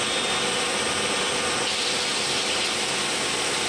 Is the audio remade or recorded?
recorded